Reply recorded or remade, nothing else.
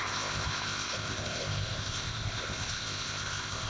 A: remade